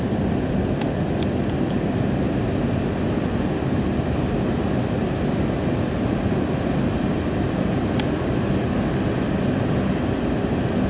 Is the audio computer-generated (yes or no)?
no